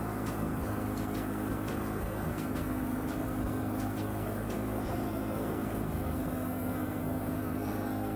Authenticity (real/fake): fake